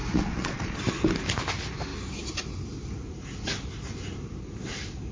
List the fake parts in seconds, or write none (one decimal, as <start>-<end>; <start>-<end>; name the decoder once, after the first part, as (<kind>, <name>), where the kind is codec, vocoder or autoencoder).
0.0-0.8 (vocoder, Vocos)